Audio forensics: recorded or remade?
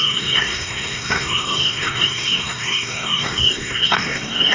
remade